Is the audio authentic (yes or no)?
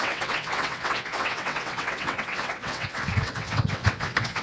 no